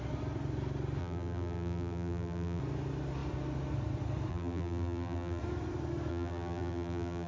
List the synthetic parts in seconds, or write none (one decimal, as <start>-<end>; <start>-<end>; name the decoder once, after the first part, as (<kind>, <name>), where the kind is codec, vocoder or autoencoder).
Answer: 1.0-2.6 (vocoder, BigVGAN v2); 4.3-5.4; 6.1-7.3